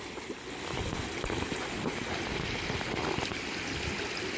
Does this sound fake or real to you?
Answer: real